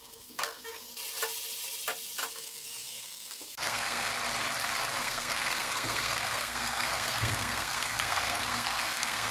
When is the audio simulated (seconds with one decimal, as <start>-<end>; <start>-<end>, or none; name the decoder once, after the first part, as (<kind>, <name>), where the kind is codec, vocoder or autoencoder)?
0.0-0.9 (codec, SNAC); 2.3-4.1; 5.0-9.3